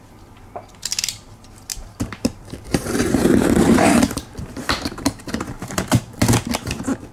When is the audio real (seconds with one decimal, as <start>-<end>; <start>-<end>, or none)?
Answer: 0.0-1.7; 6.0-7.1